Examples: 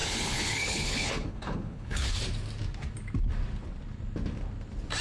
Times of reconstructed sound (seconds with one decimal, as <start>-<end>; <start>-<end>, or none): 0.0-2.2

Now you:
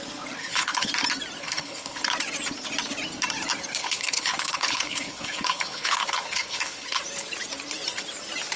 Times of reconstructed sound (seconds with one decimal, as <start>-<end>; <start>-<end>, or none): 0.4-0.9; 1.4-2.0; 3.8-7.0

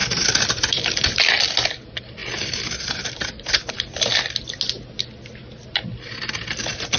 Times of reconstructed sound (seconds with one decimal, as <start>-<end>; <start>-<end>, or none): none